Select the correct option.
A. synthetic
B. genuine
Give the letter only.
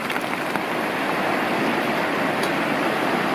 B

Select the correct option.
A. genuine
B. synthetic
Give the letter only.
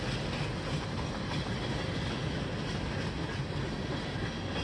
A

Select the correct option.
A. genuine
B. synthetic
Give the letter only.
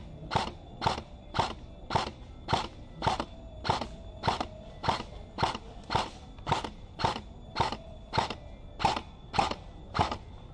A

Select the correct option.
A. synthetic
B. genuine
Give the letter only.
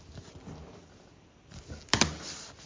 B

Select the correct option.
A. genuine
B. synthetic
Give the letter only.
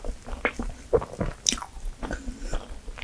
A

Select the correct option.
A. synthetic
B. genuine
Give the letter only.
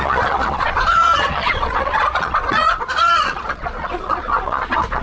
A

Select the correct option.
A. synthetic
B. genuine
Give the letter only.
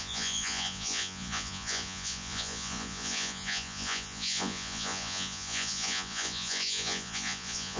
A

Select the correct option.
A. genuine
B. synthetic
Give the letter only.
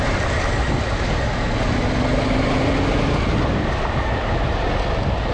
A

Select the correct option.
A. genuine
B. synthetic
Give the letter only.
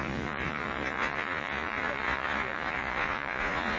B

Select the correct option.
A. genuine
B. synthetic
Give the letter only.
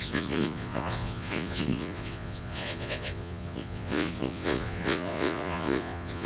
B